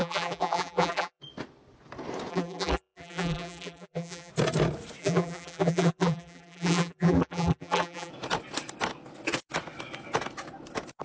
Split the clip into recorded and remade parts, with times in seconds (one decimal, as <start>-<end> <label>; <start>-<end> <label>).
0.0-1.2 remade; 1.2-2.3 recorded; 2.3-4.3 remade; 4.3-5.0 recorded; 5.0-8.1 remade; 8.1-11.0 recorded